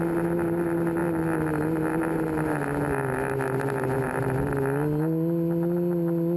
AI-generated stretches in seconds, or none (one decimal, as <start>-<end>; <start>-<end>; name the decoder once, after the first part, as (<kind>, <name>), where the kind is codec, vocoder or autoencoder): none